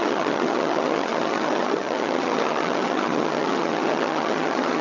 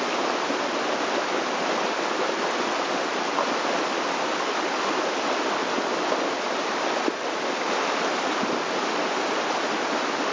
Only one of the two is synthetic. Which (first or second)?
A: first